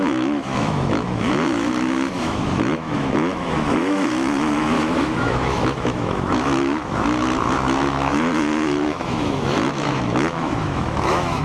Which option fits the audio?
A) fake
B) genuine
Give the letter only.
A